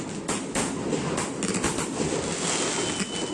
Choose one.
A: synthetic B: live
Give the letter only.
B